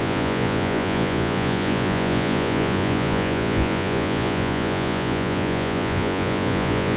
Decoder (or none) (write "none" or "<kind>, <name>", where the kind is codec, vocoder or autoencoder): vocoder, Vocos